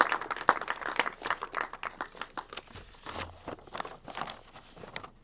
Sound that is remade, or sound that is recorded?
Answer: recorded